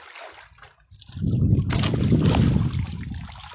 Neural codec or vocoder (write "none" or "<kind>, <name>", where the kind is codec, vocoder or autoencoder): none